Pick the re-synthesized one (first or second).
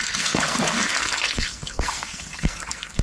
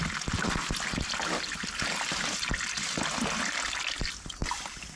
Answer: first